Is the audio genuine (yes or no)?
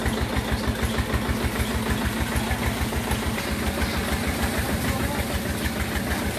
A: yes